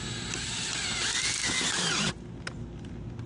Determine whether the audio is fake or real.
real